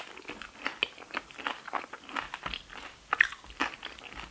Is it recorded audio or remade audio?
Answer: recorded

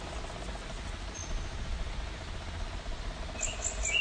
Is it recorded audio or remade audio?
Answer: recorded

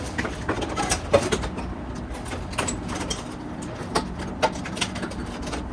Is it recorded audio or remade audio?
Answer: recorded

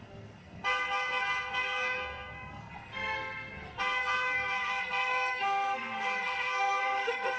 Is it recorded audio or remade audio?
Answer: remade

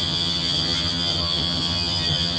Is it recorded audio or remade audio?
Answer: remade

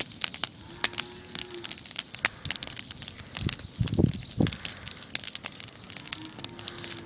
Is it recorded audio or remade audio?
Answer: recorded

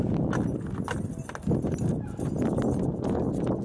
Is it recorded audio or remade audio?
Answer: recorded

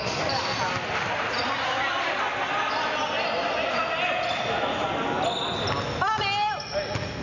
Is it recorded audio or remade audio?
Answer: recorded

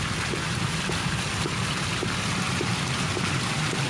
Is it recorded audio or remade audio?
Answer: recorded